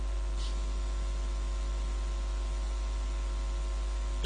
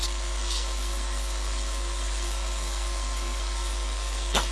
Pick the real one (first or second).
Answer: first